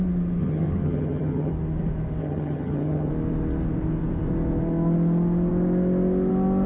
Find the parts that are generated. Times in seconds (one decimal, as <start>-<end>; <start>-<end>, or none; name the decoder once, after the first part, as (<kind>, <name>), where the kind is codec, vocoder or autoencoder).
0.4-1.5 (vocoder, HiFi-GAN); 2.2-3.1

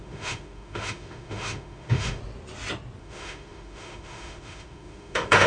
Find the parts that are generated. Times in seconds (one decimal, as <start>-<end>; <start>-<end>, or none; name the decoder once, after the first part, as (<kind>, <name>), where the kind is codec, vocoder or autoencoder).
0.0-2.2 (autoencoder, DAC-VAE); 3.0-5.5

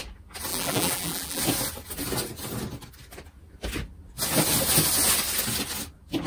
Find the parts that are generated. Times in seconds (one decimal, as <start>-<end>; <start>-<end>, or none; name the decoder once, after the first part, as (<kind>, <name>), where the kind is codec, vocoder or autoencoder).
0.5-1.4 (vocoder, BigVGAN v2)

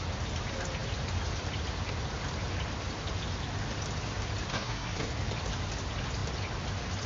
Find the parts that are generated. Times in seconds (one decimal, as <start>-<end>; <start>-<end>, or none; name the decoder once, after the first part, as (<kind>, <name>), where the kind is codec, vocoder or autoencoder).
4.5-5.1 (codec, SNAC)

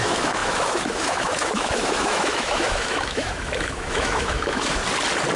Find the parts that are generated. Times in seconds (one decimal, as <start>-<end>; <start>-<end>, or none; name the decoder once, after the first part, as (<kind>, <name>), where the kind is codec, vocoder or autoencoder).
0.0-4.8 (autoencoder, DAC-VAE)

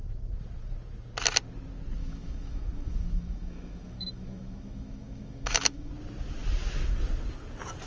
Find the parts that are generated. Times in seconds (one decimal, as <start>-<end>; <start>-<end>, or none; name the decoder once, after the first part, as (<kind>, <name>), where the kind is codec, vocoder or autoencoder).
2.0-5.9 (autoencoder, DAC-VAE)

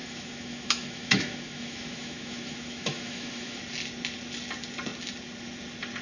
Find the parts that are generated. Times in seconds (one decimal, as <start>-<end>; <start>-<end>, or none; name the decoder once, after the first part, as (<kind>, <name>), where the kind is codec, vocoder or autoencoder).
0.0-3.6 (autoencoder, DAC-VAE)